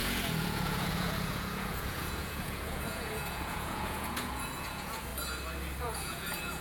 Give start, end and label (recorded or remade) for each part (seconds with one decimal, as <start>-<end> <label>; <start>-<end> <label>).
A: 0.0-5.1 remade; 5.1-5.8 recorded; 5.8-6.6 remade